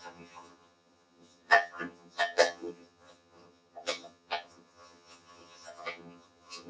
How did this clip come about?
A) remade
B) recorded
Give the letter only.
A